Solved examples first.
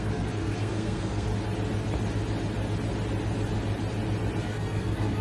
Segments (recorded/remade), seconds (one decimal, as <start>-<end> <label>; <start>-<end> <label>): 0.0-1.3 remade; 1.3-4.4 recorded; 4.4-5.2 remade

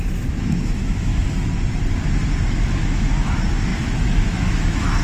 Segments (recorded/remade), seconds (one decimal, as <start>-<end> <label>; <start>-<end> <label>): 0.0-1.1 remade; 1.1-2.5 recorded; 2.5-5.0 remade

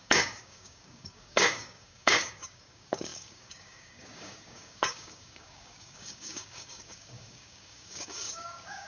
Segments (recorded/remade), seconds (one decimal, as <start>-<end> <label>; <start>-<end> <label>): 0.0-8.9 remade